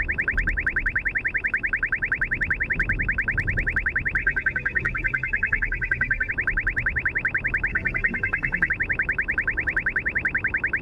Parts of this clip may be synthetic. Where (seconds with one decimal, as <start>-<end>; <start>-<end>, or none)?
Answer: 4.2-6.3; 7.7-8.7